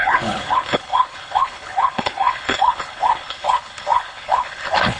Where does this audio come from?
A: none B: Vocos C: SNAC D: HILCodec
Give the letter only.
D